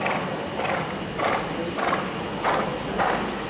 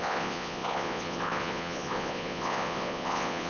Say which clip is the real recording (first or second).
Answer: first